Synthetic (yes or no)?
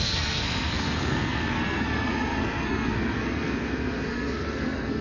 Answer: yes